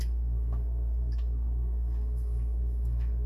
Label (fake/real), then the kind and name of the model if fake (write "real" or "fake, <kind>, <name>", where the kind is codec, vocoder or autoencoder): fake, codec, SNAC